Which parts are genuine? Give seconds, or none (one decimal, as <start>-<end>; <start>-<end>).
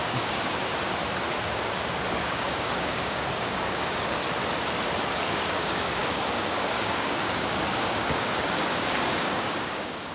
0.7-1.4; 4.2-5.5